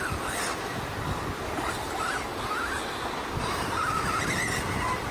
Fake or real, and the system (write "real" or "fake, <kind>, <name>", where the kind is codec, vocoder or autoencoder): real